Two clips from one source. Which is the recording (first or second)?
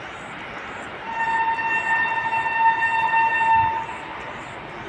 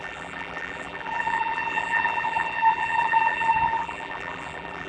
first